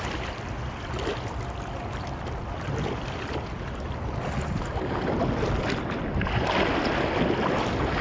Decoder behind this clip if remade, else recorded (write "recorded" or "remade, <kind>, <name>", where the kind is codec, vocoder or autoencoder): recorded